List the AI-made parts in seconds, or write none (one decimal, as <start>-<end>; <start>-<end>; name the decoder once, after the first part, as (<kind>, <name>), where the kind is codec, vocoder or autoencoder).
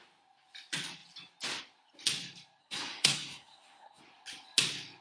2.6-4.0 (codec, SNAC)